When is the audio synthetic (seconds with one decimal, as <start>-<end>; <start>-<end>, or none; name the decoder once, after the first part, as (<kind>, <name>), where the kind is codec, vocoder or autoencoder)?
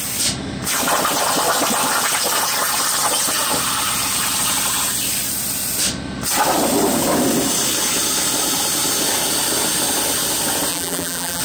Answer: 10.7-11.4 (vocoder, BigVGAN v2)